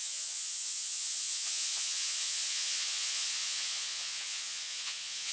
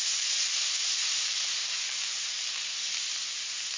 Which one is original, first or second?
second